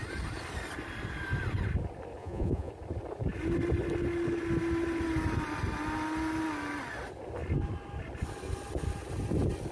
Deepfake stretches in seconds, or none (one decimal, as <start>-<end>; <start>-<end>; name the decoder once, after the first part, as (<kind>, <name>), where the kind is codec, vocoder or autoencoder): 2.2-2.7 (vocoder, Vocos)